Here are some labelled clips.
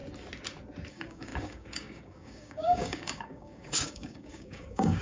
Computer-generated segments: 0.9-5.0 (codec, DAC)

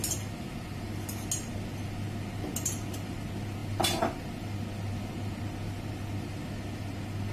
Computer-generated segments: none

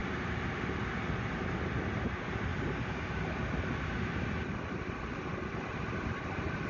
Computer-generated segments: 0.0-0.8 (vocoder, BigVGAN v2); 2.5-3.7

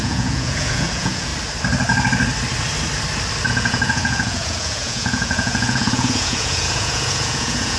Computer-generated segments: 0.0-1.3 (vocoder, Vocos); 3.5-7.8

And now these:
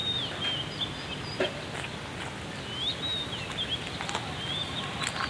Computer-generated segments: none

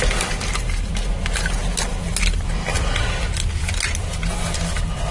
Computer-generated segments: none